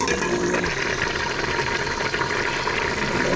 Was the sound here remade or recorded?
recorded